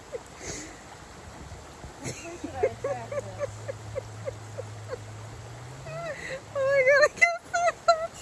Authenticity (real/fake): real